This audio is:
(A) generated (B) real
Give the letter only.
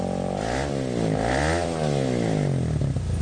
B